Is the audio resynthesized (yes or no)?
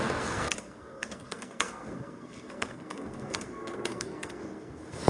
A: yes